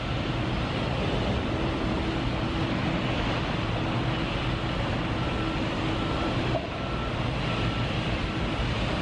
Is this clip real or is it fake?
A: fake